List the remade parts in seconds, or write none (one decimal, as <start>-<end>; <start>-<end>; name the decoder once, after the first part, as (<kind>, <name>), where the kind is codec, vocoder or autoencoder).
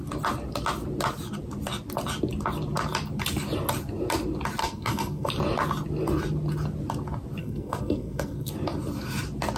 4.6-5.3 (codec, SNAC); 7.4-8.5